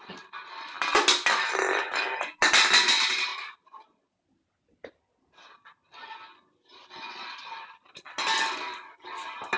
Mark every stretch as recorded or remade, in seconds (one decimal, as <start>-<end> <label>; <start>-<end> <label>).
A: 0.0-9.6 recorded